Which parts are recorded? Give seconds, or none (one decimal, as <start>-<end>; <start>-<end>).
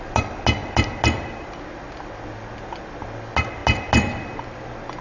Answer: 0.0-5.0